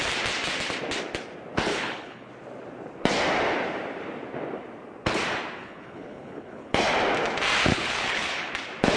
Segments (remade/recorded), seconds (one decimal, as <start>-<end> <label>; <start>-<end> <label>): 0.0-1.7 recorded; 1.7-2.3 remade; 2.3-5.6 recorded; 5.6-6.8 remade; 6.8-7.7 recorded; 7.7-8.5 remade; 8.5-9.0 recorded